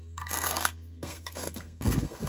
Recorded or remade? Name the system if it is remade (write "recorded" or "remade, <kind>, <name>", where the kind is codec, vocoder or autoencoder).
remade, codec, SNAC